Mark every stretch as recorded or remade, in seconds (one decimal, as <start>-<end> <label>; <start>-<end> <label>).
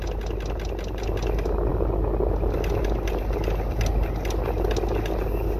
0.0-5.6 recorded